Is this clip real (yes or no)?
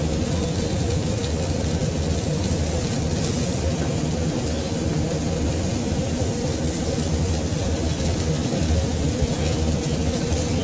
yes